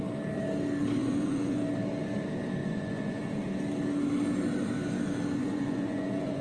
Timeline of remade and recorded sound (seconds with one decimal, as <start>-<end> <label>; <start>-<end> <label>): 0.0-1.0 recorded; 1.0-1.6 remade; 1.6-2.6 recorded; 2.6-3.2 remade; 3.2-5.4 recorded; 5.4-6.4 remade